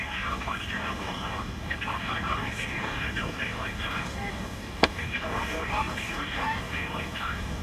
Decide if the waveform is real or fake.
fake